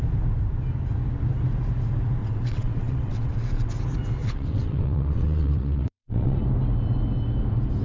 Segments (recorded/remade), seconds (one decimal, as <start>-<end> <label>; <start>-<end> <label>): 0.0-2.2 recorded; 2.2-3.7 remade; 3.7-4.2 recorded; 4.2-6.4 remade; 6.4-7.8 recorded

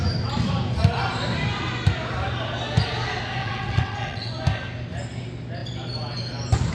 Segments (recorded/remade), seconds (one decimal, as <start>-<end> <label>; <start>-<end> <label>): 0.0-3.4 recorded; 3.4-4.3 remade; 4.3-6.7 recorded

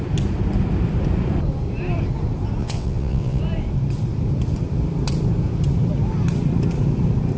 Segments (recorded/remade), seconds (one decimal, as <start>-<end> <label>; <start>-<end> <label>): 0.0-2.6 recorded; 2.6-3.4 remade; 3.4-7.4 recorded

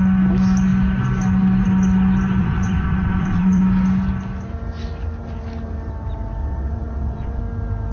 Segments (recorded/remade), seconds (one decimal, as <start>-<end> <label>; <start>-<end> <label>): 0.0-2.4 recorded; 2.4-3.6 remade; 3.6-6.4 recorded; 6.4-7.4 remade; 7.4-7.9 recorded

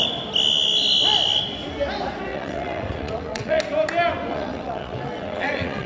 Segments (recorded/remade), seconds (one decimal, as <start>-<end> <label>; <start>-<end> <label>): 0.0-2.3 recorded; 2.3-3.6 remade; 3.6-4.3 recorded; 4.3-5.9 remade

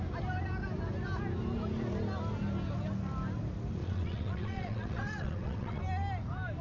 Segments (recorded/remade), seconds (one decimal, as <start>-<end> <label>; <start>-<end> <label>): 0.0-3.8 recorded; 3.8-5.8 remade; 5.8-6.6 recorded

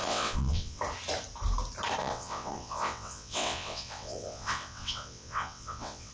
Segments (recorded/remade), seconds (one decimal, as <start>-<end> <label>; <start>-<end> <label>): 0.0-0.8 remade; 0.8-2.0 recorded; 2.0-6.1 remade

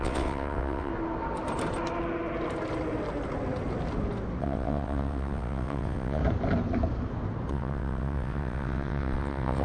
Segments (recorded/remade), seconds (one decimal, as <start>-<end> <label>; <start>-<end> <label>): 0.0-0.9 remade; 0.9-4.4 recorded; 4.4-6.2 remade; 6.2-7.5 recorded; 7.5-9.6 remade